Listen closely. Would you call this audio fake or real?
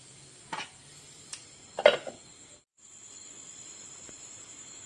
real